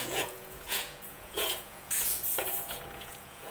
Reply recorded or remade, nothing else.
remade